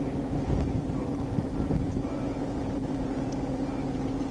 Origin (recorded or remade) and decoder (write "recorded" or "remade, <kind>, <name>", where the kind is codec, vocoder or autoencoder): recorded